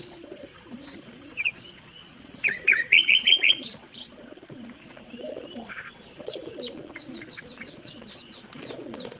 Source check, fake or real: fake